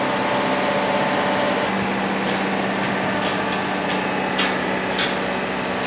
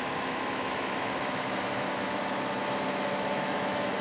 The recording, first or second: first